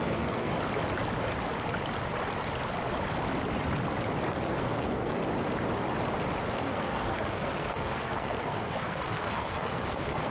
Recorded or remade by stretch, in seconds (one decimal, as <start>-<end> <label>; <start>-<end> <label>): 0.0-0.5 remade; 0.5-4.3 recorded; 4.3-5.2 remade; 5.2-6.5 recorded; 6.5-10.3 remade